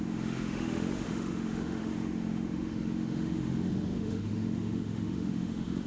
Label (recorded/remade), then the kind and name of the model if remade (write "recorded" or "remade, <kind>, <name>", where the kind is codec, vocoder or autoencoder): remade, autoencoder, DAC-VAE